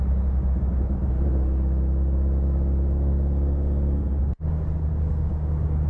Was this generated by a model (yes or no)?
no